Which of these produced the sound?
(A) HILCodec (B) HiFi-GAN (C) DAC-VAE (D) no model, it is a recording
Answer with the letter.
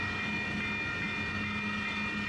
D